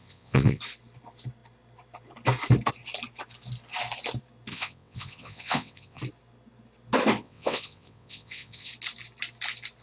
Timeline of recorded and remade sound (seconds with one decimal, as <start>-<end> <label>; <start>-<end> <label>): 0.0-0.6 remade; 0.6-4.5 recorded; 4.5-6.0 remade; 6.0-7.2 recorded; 7.2-8.7 remade; 8.7-9.8 recorded